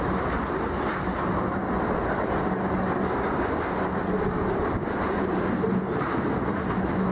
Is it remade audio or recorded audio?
recorded